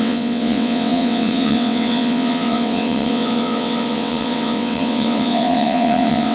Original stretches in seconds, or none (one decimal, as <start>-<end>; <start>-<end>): none